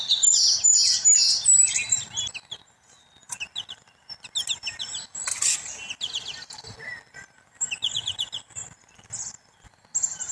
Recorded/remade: recorded